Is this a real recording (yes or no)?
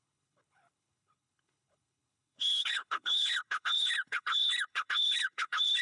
no